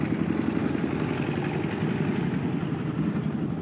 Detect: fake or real real